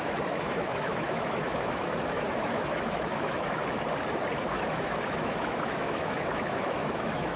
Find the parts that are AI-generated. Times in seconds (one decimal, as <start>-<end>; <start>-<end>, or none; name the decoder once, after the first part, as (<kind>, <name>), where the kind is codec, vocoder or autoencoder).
0.0-3.6 (autoencoder, DAC-VAE); 4.4-7.4